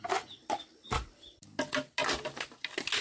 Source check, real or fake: real